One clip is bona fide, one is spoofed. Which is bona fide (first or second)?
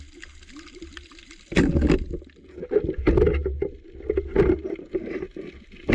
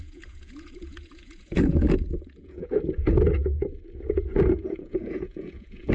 first